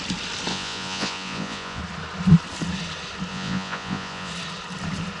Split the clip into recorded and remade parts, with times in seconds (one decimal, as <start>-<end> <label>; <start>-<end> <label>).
0.0-0.5 recorded; 0.5-1.8 remade; 1.8-3.3 recorded; 3.3-4.3 remade; 4.3-5.2 recorded

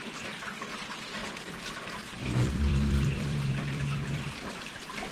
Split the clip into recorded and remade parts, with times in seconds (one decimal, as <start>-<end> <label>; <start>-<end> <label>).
0.0-2.2 recorded; 2.2-4.6 remade; 4.6-5.1 recorded

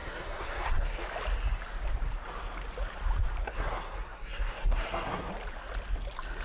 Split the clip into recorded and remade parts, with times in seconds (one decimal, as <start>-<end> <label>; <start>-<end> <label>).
0.0-1.0 remade; 1.0-3.4 recorded; 3.4-5.3 remade; 5.3-6.4 recorded

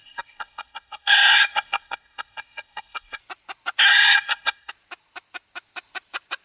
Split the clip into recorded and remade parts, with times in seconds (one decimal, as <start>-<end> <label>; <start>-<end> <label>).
0.0-3.2 remade; 3.2-3.9 recorded; 3.9-4.7 remade; 4.7-6.4 recorded

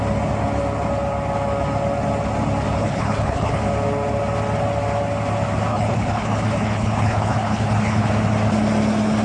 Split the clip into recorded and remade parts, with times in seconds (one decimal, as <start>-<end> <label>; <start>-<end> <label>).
0.0-2.8 recorded; 2.8-3.6 remade; 3.6-5.7 recorded; 5.7-8.1 remade; 8.1-9.2 recorded

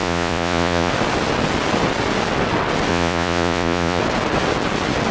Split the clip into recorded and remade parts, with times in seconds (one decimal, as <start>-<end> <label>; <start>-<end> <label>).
0.0-0.9 remade; 0.9-2.9 recorded; 2.9-4.0 remade; 4.0-5.1 recorded

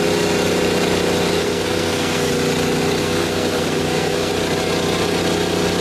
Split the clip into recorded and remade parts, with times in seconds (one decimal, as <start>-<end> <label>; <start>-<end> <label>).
0.0-1.4 recorded; 1.4-2.3 remade; 2.3-3.0 recorded; 3.0-4.3 remade; 4.3-5.8 recorded